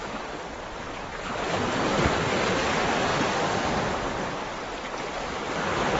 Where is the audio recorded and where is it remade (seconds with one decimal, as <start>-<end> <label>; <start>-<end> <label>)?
0.0-6.0 recorded